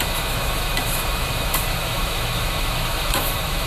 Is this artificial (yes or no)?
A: yes